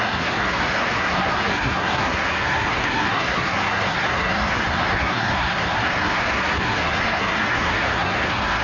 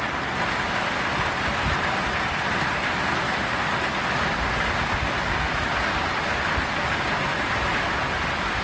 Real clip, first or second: second